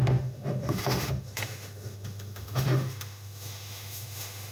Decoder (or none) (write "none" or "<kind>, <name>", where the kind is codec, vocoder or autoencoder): autoencoder, DAC-VAE